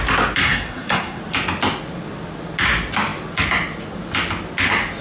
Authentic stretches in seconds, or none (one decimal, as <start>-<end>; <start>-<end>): 0.0-0.4; 1.2-5.0